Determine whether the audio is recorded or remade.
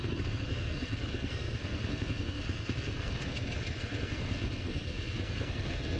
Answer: remade